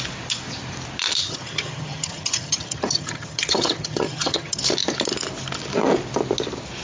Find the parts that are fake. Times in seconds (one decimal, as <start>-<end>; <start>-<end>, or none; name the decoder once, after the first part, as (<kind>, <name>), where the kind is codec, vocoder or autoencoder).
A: 1.2-4.6 (vocoder, HiFi-GAN)